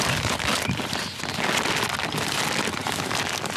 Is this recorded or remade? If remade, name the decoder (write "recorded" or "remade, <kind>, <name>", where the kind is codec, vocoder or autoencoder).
recorded